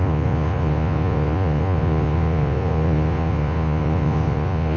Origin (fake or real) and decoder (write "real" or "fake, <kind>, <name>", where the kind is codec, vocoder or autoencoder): fake, vocoder, Vocos